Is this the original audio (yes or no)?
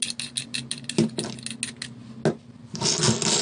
yes